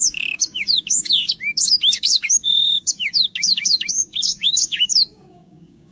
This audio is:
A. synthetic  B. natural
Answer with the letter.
A